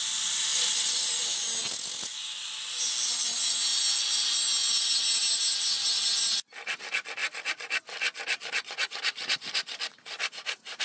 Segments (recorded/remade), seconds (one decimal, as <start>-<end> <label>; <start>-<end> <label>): 0.0-10.8 recorded